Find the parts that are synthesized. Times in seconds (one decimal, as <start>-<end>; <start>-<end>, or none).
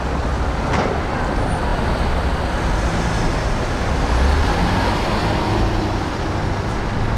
none